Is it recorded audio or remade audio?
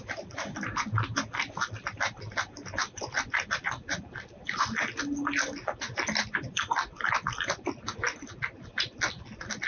recorded